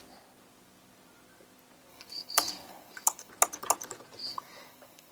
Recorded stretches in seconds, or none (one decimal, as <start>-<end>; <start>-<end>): 0.0-1.9; 3.3-4.3